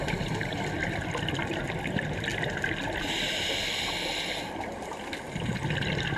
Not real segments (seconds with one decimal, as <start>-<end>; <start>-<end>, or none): 0.0-2.3